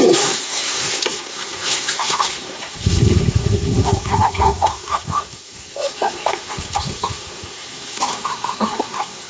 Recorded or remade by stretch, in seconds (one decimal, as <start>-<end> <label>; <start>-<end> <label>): 0.0-9.3 remade